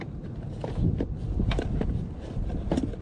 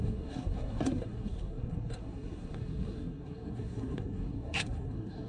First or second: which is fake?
second